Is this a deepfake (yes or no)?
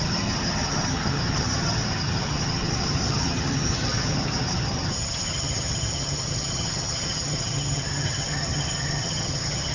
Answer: yes